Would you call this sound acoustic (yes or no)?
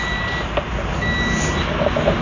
yes